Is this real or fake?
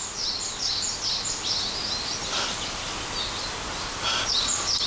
real